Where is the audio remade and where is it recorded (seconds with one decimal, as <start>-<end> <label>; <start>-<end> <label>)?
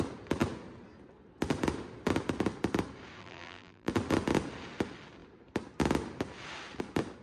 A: 0.0-3.2 recorded; 3.2-3.9 remade; 3.9-7.2 recorded